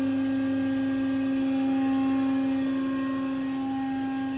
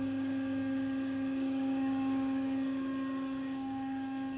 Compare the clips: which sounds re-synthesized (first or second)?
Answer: second